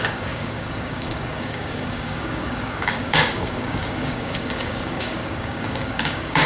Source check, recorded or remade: remade